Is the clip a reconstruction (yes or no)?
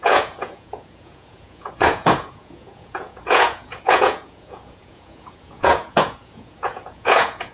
yes